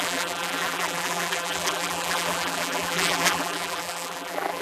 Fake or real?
fake